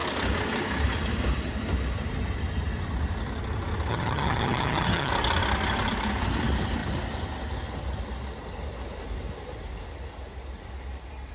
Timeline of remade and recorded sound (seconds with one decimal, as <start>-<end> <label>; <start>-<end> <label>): 0.0-3.9 recorded; 3.9-5.1 remade; 5.1-11.3 recorded